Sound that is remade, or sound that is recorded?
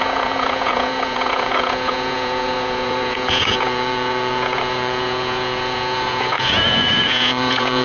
remade